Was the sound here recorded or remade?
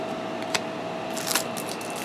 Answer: recorded